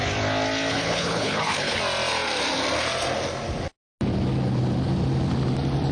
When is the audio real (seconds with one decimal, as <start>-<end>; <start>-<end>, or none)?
0.0-0.7; 1.8-5.9